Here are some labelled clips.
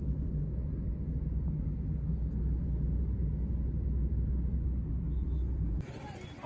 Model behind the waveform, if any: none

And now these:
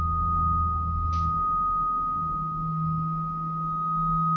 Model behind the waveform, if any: none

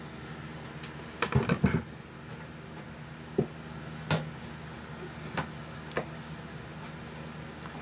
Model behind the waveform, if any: none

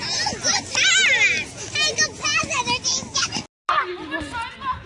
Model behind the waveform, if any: none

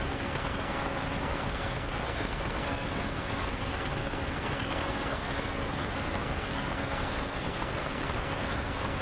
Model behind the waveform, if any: codec, SNAC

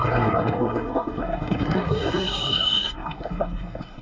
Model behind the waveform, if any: codec, SNAC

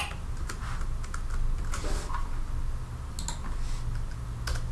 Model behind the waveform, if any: none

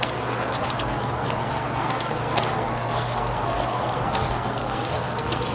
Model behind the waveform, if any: codec, SNAC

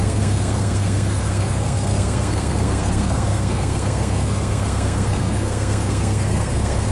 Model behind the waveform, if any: codec, SNAC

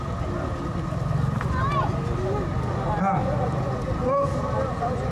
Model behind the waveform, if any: none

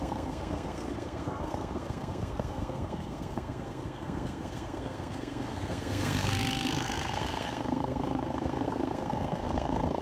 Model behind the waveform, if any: codec, SNAC